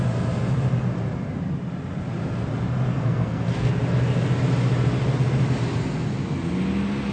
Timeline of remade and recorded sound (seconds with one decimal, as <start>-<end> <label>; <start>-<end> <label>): 0.0-2.9 recorded; 2.9-3.7 remade; 3.7-7.1 recorded